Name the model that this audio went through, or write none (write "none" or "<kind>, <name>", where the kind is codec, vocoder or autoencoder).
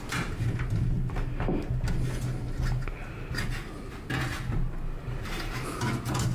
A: none